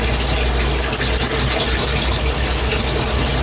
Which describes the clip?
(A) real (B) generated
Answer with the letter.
A